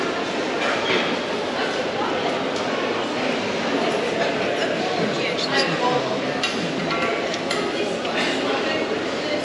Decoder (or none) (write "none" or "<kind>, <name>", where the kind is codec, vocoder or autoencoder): none